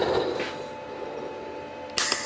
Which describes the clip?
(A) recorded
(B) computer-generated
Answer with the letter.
A